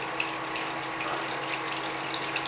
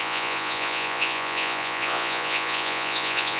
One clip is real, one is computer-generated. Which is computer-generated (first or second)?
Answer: second